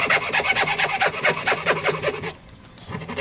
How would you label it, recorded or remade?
remade